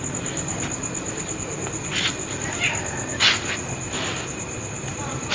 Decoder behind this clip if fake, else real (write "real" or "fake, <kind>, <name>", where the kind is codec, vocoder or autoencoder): real